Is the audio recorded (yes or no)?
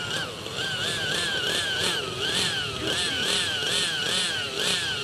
yes